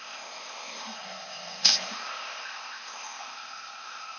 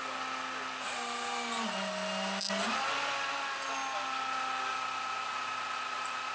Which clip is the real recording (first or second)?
second